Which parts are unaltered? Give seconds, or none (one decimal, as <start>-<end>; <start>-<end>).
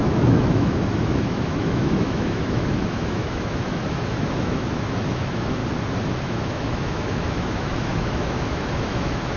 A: 5.6-6.2